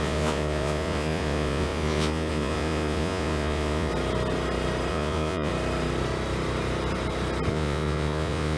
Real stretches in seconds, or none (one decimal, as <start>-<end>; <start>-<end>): 3.9-4.9; 5.5-7.5